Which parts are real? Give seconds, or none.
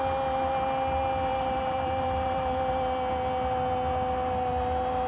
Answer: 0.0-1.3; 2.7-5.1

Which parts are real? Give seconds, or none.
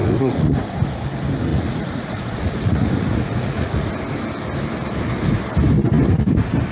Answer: 0.6-1.5; 3.9-6.7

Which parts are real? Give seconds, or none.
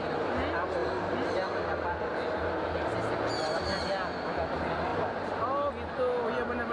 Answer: 0.0-6.7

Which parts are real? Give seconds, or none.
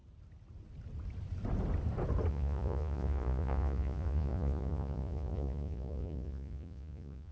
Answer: 0.0-2.3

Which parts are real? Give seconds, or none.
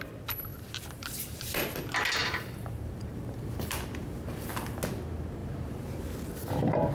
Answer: 0.0-0.5; 1.8-2.2; 4.5-5.4; 6.0-6.9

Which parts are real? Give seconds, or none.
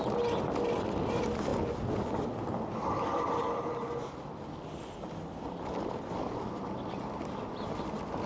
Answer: 0.0-8.3